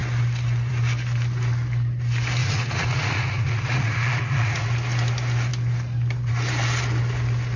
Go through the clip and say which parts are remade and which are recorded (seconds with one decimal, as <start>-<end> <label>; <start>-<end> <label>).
0.0-2.4 recorded; 2.4-4.7 remade; 4.7-7.6 recorded